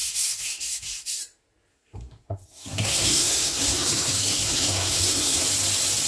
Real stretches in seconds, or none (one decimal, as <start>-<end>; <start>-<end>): 1.2-1.7; 5.4-6.1